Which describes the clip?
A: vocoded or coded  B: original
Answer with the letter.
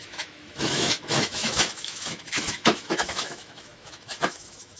A